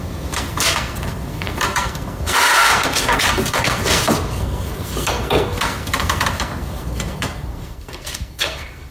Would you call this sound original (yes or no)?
no